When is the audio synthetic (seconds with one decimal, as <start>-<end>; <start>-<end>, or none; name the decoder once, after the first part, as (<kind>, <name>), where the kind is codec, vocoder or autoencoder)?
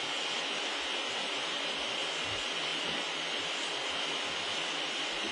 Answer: none